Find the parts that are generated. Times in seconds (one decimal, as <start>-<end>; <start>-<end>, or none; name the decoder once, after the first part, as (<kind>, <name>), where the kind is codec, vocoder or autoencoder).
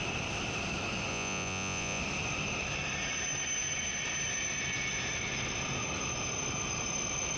1.1-2.0 (vocoder, Vocos)